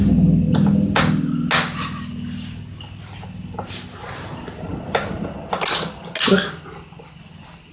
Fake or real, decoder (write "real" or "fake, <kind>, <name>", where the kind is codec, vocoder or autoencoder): real